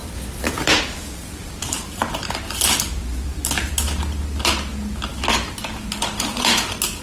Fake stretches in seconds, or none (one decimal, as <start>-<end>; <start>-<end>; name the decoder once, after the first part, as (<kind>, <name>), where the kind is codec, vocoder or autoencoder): 0.0-0.8 (vocoder, BigVGAN v2); 2.0-3.7; 5.1-5.7